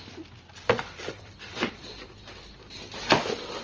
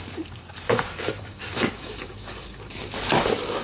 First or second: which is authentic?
first